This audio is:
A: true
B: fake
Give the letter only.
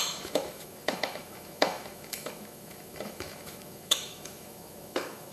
B